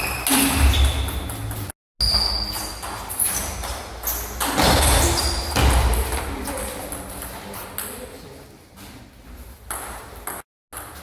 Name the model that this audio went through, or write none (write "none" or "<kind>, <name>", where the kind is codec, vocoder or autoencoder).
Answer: none